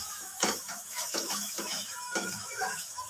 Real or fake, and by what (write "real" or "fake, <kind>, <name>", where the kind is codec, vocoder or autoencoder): fake, autoencoder, DAC-VAE